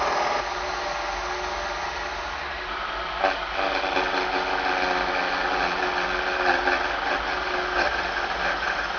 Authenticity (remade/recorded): recorded